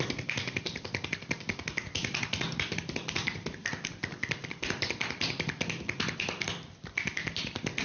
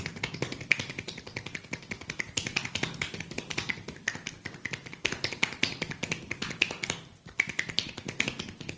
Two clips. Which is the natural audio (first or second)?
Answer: second